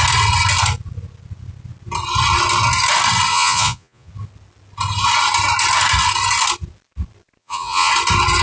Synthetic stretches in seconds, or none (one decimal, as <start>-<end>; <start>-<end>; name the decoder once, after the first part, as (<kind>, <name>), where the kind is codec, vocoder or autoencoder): 3.3-4.1 (vocoder, Vocos); 7.4-7.9